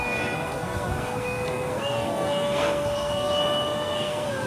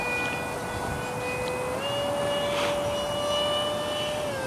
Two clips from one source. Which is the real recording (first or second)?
second